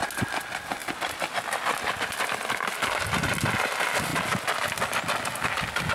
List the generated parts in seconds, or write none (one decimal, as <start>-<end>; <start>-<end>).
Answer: 0.8-2.4